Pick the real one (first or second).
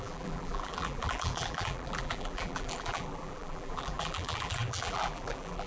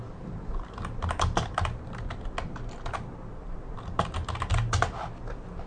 second